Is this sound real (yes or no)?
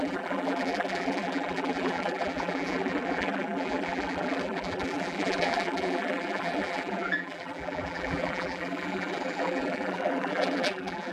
no